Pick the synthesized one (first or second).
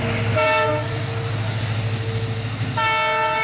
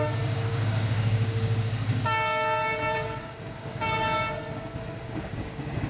second